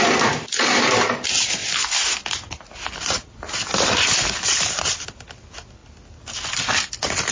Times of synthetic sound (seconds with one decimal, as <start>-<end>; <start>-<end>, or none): none